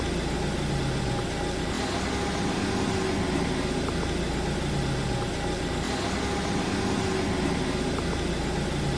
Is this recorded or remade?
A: recorded